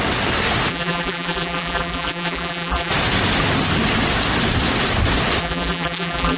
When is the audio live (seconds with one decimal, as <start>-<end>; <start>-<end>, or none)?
0.0-0.7; 2.9-5.4